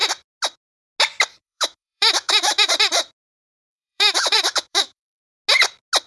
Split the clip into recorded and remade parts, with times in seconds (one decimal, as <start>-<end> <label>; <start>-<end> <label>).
0.0-1.4 recorded; 1.4-2.7 remade; 2.7-3.3 recorded; 3.3-5.2 remade; 5.2-6.1 recorded